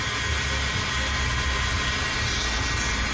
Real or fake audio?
real